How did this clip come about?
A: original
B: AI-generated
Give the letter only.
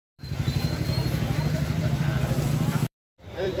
B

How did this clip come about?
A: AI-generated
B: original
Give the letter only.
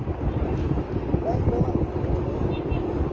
B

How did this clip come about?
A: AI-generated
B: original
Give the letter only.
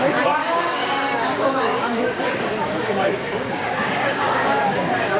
A